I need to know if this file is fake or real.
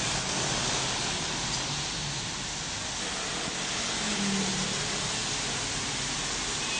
real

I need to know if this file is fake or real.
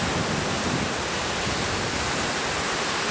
real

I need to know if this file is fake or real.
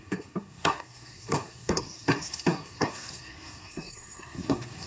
fake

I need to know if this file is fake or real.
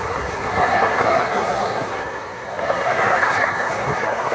fake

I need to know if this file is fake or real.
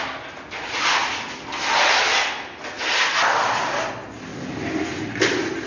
real